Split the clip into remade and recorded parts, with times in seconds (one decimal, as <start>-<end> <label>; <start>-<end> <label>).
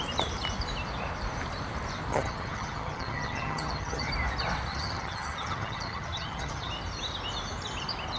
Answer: 0.0-2.1 recorded; 2.1-4.1 remade; 4.1-4.7 recorded; 4.7-6.7 remade; 6.7-8.2 recorded